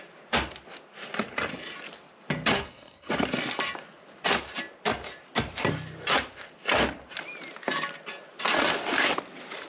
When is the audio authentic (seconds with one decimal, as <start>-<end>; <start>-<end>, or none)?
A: 0.0-2.5; 3.1-9.7